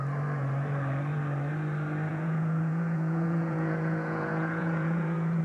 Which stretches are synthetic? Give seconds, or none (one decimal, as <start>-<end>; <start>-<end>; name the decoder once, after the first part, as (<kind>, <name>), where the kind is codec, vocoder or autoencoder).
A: 2.1-5.4 (vocoder, Vocos)